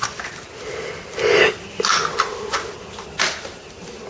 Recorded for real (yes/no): yes